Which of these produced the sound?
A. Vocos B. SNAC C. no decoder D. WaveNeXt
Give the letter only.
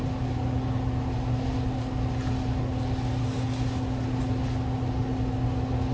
C